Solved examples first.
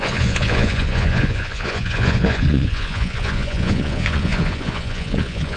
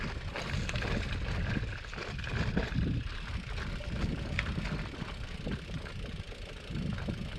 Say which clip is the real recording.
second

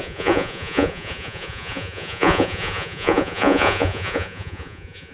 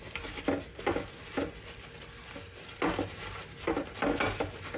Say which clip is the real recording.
second